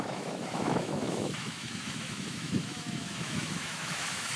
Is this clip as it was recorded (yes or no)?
no